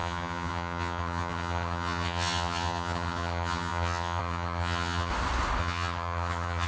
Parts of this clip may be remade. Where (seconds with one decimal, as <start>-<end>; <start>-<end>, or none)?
0.0-5.1; 5.6-6.7